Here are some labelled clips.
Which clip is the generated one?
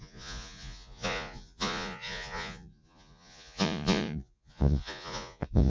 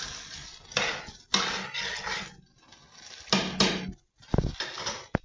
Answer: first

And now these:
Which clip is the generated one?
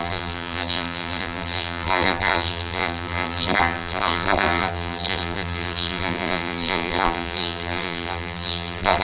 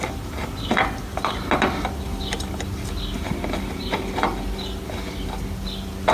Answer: first